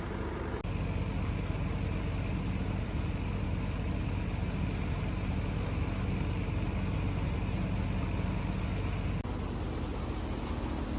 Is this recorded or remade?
recorded